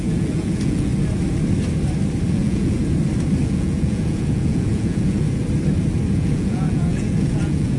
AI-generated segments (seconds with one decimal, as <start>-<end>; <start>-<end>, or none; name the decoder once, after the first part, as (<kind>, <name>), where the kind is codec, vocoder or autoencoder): 0.0-0.9 (vocoder, Vocos); 2.3-2.8; 3.4-5.4; 6.1-7.8